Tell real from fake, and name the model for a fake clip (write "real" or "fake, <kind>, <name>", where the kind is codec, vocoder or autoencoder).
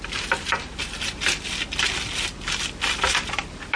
real